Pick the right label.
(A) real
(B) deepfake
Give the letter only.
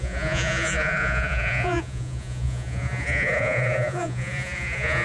B